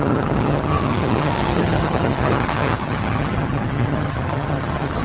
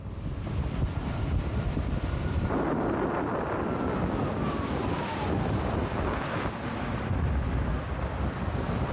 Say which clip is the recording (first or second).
second